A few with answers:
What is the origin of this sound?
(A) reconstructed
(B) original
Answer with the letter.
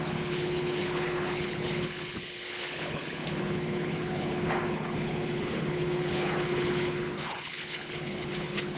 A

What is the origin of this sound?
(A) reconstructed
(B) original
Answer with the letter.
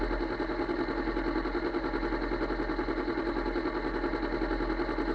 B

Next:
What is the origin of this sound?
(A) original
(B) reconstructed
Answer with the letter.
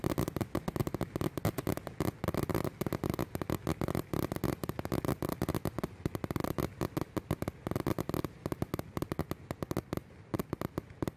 A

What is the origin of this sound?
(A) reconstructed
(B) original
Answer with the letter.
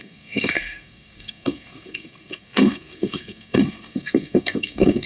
A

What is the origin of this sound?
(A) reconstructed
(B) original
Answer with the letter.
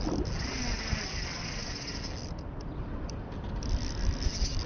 B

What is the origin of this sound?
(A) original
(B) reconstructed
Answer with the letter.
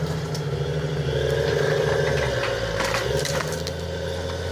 A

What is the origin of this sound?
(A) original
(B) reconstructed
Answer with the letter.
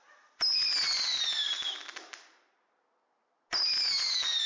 A